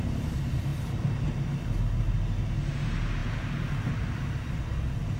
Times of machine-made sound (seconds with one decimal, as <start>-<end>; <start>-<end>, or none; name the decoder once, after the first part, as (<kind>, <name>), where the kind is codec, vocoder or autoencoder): none

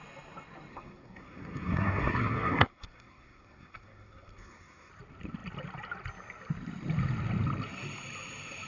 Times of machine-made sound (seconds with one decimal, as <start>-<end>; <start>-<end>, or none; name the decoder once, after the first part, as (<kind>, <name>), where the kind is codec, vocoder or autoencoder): 0.7-4.9 (codec, SNAC)